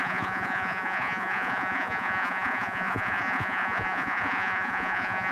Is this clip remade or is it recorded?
remade